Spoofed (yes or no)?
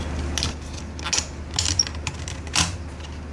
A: no